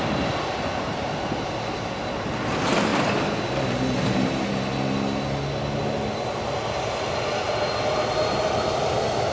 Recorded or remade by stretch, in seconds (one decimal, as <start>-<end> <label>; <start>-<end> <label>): 0.0-9.3 recorded